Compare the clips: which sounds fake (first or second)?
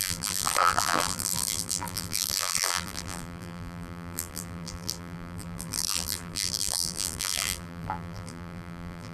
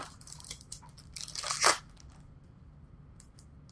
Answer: first